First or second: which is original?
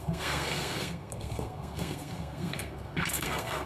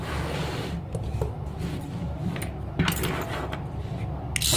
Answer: second